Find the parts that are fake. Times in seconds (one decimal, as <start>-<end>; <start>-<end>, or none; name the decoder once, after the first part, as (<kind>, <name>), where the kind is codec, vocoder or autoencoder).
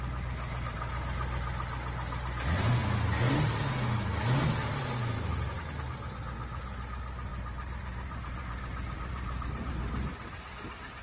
7.3-10.5 (vocoder, BigVGAN v2)